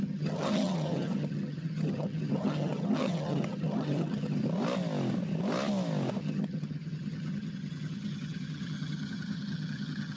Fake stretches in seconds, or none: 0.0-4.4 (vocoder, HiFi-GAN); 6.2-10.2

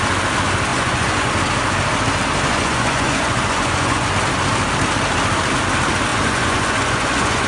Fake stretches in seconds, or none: 0.7-1.3 (vocoder, Vocos); 2.5-4.1; 6.1-7.5

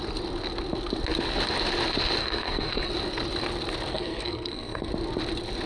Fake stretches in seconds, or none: 2.2-2.9 (codec, SNAC); 3.9-4.9

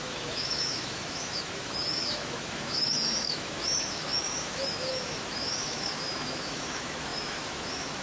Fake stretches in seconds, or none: 0.0-8.0 (autoencoder, DAC-VAE)

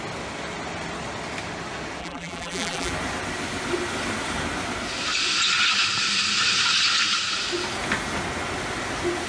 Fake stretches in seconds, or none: 2.0-2.9 (vocoder, BigVGAN v2)

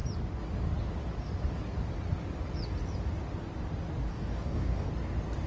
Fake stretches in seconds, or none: 4.1-4.9 (codec, DAC)

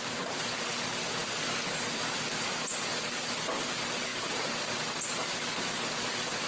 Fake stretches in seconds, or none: none